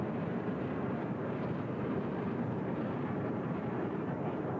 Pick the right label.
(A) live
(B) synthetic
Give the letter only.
B